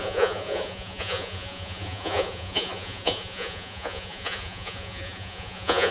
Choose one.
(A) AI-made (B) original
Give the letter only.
A